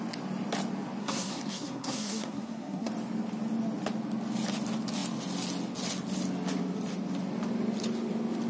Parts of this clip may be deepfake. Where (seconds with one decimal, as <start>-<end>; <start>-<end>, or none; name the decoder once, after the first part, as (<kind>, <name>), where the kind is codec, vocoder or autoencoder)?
1.0-2.9 (codec, SNAC)